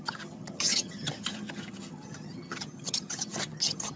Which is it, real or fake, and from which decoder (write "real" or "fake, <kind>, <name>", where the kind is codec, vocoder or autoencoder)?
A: fake, vocoder, HiFi-GAN